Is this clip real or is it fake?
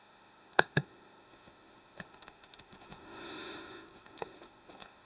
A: fake